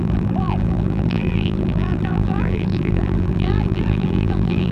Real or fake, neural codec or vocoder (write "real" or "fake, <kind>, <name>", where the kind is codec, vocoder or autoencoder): fake, vocoder, BigVGAN v2